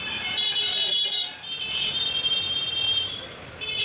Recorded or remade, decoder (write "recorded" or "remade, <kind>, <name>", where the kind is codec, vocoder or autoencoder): remade, vocoder, BigVGAN v2